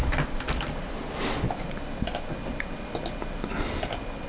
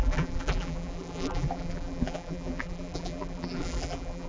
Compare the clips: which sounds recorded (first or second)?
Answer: first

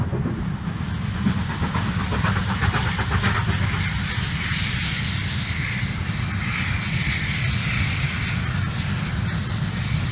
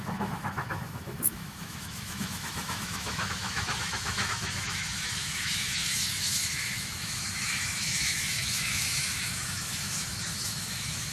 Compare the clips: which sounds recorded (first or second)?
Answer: first